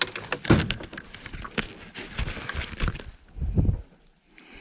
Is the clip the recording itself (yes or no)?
yes